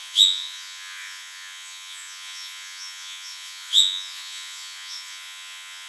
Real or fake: fake